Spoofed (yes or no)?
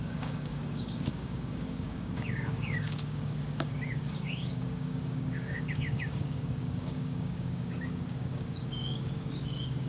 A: yes